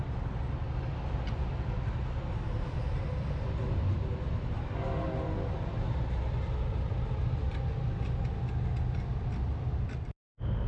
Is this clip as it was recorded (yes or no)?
yes